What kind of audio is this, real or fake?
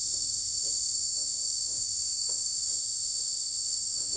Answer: fake